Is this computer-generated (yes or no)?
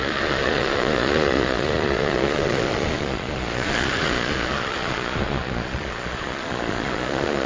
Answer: yes